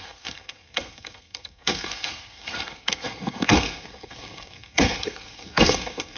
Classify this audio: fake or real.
fake